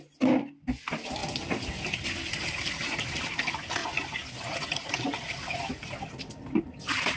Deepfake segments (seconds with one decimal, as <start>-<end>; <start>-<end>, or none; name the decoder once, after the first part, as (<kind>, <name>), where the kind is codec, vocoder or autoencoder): none